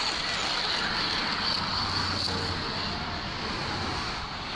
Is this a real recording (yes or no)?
yes